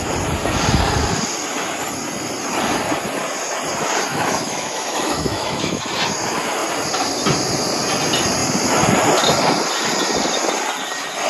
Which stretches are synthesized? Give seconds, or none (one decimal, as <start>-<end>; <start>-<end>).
4.1-5.8